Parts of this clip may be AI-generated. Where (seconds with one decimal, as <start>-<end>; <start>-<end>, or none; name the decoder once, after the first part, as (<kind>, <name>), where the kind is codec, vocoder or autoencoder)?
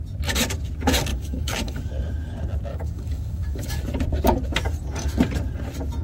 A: 1.1-1.9 (codec, DAC); 2.7-3.8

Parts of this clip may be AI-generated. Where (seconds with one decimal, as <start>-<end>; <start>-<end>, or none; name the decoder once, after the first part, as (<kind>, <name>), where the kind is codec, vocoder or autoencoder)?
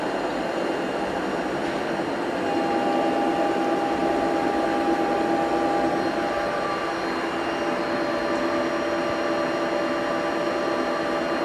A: none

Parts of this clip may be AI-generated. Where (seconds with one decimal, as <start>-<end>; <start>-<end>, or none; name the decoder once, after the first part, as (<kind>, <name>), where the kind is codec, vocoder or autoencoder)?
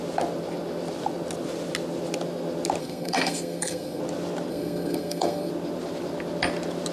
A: 2.8-4.0 (codec, SNAC); 4.5-5.5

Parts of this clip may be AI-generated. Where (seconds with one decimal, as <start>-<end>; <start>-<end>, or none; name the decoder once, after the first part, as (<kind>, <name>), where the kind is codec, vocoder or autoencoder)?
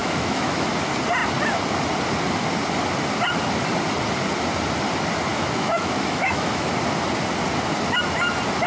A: 0.0-0.7 (autoencoder, DAC-VAE); 5.3-6.7